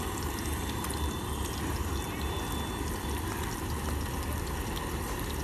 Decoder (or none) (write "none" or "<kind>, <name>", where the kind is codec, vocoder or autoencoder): none